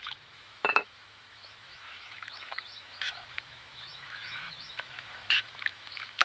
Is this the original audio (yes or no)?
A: no